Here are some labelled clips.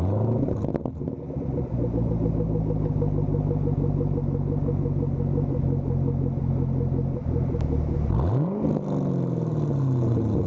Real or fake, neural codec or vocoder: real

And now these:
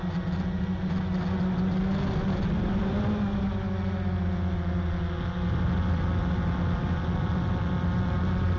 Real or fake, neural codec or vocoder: real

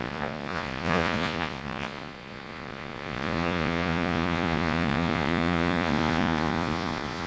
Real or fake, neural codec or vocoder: fake, vocoder, Vocos